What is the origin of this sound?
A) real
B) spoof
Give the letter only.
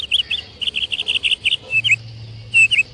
A